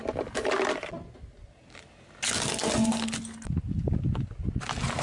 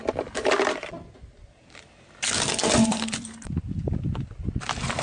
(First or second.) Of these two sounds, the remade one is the second